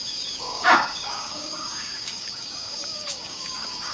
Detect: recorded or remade remade